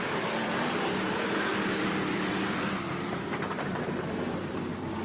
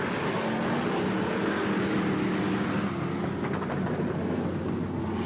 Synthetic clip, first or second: first